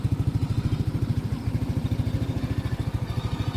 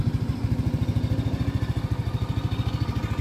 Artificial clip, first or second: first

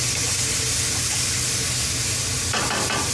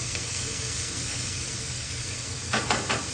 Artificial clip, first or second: second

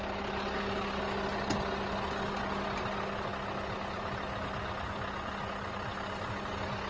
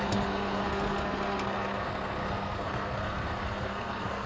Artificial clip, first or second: second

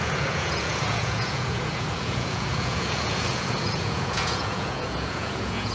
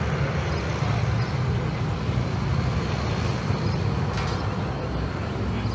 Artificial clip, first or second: first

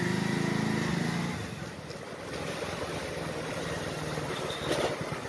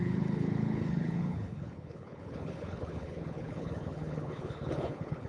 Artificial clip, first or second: second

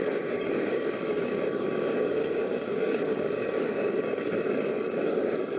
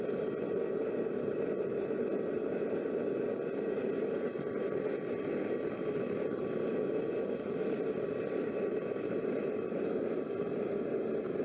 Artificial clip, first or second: first